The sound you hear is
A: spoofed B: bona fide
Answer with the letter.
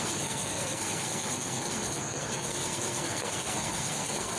A